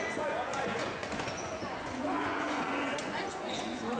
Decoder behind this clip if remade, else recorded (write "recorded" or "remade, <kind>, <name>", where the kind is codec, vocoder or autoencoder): remade, vocoder, Vocos